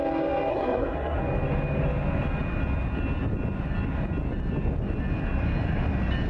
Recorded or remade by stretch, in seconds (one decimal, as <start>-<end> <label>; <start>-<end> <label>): 0.0-0.5 recorded; 0.5-1.2 remade; 1.2-6.3 recorded